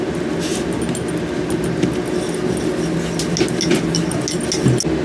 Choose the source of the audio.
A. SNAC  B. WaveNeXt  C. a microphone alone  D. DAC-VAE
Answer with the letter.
C